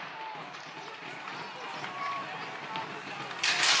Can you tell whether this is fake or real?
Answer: real